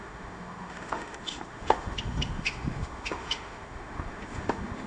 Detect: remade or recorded remade